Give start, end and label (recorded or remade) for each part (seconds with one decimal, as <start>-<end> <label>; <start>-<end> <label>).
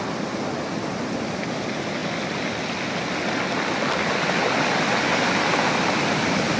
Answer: 0.0-6.6 recorded